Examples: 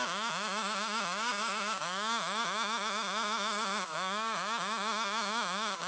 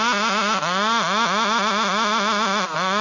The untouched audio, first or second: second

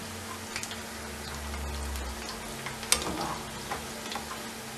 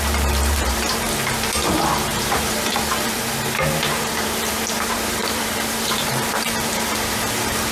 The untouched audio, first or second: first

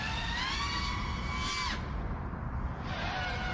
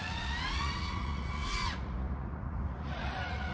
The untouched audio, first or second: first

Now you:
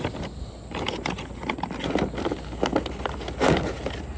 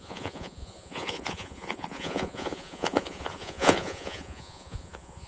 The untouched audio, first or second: first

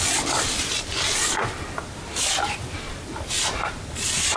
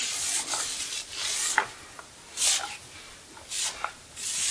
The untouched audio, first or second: second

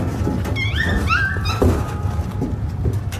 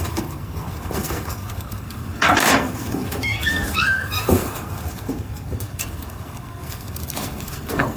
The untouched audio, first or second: first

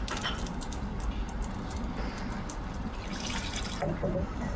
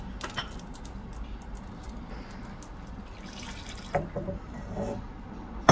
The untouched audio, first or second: second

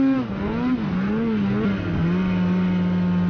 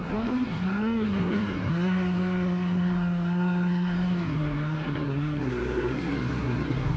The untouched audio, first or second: first